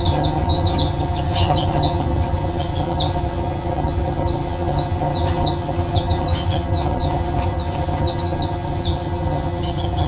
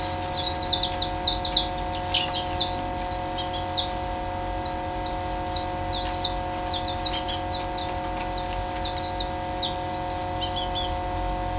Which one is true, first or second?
second